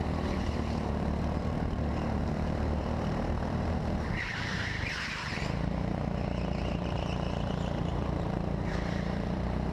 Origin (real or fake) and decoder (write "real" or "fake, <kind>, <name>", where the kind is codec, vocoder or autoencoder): fake, vocoder, BigVGAN v2